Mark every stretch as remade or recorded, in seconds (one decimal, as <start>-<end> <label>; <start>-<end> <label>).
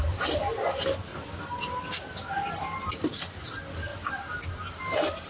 0.0-5.3 recorded